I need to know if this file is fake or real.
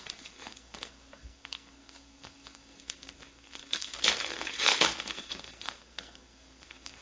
fake